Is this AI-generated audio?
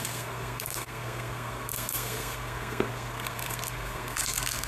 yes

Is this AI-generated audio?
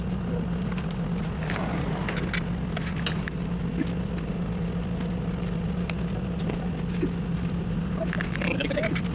no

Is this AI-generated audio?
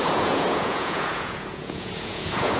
yes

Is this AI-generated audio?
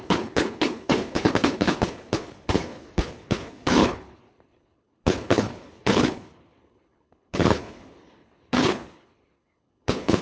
yes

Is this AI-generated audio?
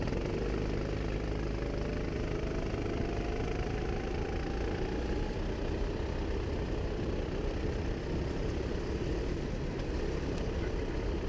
no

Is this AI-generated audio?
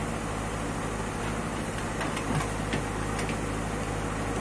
no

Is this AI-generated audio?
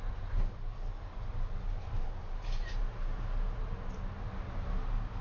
no